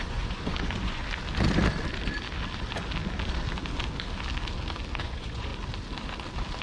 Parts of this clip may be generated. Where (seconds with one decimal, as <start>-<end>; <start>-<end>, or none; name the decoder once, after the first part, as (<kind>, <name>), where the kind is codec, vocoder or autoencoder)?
0.0-1.0 (vocoder, Vocos); 5.0-5.5